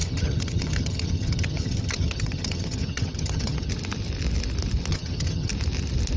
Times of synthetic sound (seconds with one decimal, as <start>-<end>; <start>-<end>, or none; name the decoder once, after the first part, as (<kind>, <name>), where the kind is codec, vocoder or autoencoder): 0.0-3.7 (vocoder, HiFi-GAN); 4.9-5.5